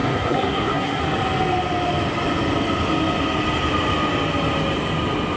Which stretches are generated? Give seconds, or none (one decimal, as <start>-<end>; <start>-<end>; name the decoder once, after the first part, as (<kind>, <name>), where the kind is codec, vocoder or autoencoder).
0.0-1.0 (codec, SNAC)